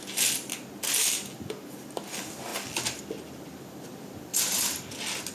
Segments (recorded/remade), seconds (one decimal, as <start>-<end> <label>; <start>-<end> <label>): 0.0-4.3 recorded; 4.3-4.8 remade; 4.8-5.3 recorded